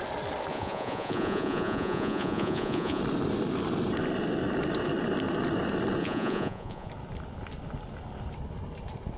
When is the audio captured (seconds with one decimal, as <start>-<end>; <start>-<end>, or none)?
0.0-0.5; 3.0-6.0; 6.9-9.2